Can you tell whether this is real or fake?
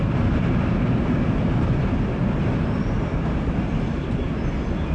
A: real